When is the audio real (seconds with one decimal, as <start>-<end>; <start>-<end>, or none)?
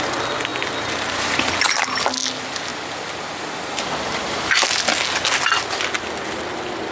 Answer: 0.0-6.9